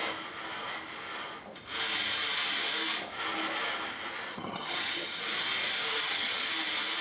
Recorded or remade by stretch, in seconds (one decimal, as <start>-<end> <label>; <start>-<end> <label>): 0.0-4.3 recorded; 4.3-5.2 remade; 5.2-5.9 recorded; 5.9-6.5 remade; 6.5-7.0 recorded